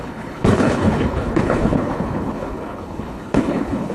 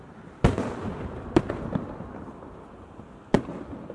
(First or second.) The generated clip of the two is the first